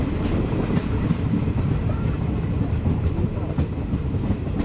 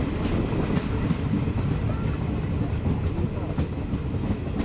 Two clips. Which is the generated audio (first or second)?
first